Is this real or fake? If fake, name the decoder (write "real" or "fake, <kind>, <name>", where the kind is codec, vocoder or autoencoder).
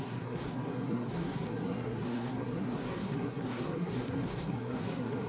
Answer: fake, codec, SNAC